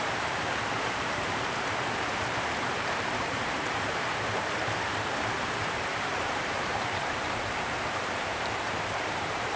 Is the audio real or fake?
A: fake